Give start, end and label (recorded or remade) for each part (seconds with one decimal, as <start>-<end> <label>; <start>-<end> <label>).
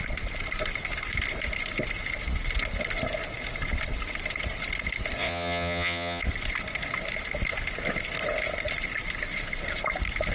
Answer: 0.0-5.2 recorded; 5.2-6.2 remade; 6.2-10.3 recorded